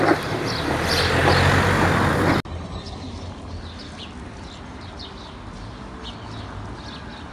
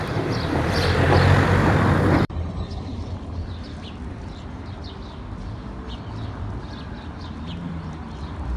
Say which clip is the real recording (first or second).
first